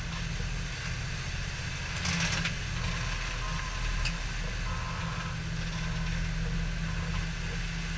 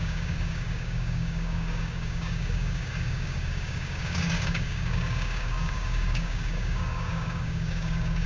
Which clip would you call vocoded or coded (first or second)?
second